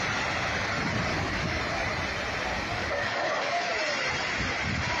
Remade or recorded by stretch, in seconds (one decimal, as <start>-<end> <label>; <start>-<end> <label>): 0.0-1.1 recorded; 1.1-1.6 remade; 1.6-2.8 recorded; 2.8-3.7 remade; 3.7-5.0 recorded